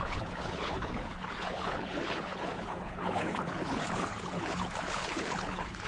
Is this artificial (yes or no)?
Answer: yes